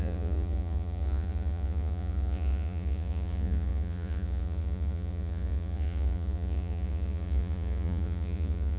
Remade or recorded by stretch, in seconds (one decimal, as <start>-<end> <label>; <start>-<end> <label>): 0.0-8.8 remade